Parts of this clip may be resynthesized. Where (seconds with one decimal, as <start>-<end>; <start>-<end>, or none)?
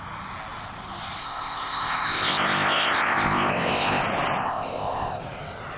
1.2-4.0; 4.4-5.2